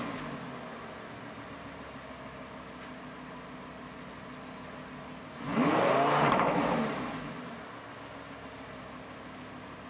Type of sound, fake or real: real